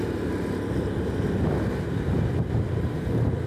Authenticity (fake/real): real